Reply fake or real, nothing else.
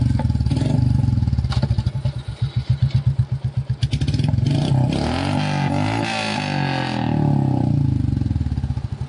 real